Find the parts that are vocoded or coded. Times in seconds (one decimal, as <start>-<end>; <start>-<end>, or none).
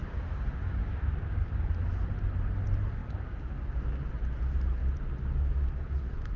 0.0-1.5; 3.0-4.1